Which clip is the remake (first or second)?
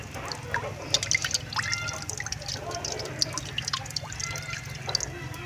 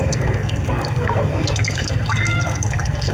second